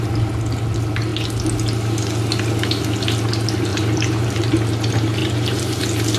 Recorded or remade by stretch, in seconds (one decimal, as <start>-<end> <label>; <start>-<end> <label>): 0.0-3.7 recorded; 3.7-4.5 remade; 4.5-5.2 recorded; 5.2-5.8 remade; 5.8-6.2 recorded